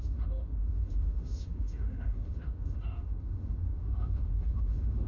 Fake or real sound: fake